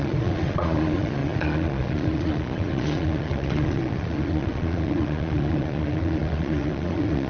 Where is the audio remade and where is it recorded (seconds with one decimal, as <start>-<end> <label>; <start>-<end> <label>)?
0.0-7.3 remade